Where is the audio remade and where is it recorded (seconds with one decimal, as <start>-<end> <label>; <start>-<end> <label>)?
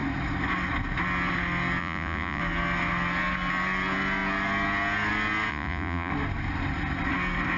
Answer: 0.0-1.8 recorded; 1.8-2.4 remade; 2.4-5.5 recorded; 5.5-6.1 remade; 6.1-7.6 recorded